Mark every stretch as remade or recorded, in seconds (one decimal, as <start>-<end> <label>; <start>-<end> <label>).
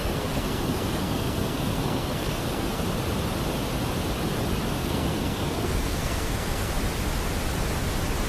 0.0-2.8 remade; 2.8-4.8 recorded; 4.8-6.7 remade; 6.7-8.3 recorded